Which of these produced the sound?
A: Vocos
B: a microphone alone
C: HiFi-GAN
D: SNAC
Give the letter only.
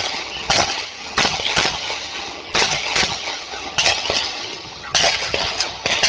C